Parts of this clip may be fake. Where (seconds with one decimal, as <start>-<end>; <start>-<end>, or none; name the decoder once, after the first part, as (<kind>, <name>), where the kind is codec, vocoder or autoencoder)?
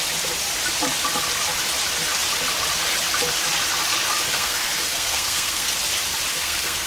4.3-5.7 (codec, SNAC); 6.3-6.9